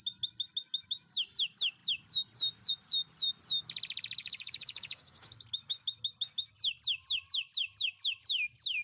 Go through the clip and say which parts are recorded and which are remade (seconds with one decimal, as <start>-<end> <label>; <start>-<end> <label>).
0.0-4.2 recorded; 4.2-5.3 remade; 5.3-8.8 recorded